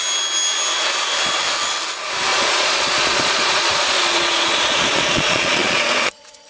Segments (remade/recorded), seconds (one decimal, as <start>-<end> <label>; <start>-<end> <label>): 0.0-2.3 recorded; 2.3-6.5 remade